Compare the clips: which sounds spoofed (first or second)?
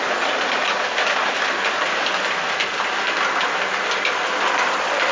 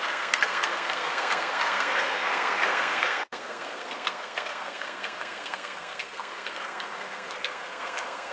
second